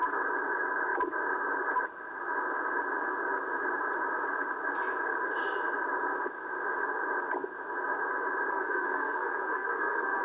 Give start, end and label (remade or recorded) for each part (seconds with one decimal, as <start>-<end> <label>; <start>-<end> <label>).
0.0-8.5 recorded; 8.5-10.2 remade